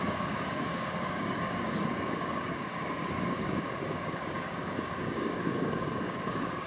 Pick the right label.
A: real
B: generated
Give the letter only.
B